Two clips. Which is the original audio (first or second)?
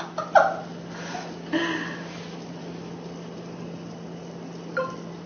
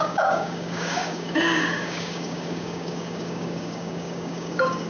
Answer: first